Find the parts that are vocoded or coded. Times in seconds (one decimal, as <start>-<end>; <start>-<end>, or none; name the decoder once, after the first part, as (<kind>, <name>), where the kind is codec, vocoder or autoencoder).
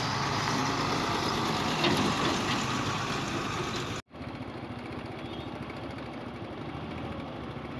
none